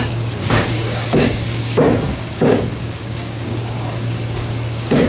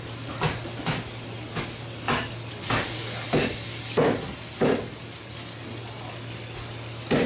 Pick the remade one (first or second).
first